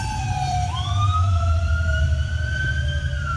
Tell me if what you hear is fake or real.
fake